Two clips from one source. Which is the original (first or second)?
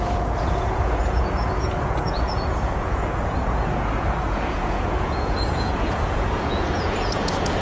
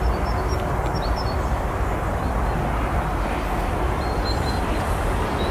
second